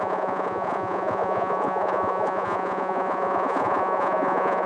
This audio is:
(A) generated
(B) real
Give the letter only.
A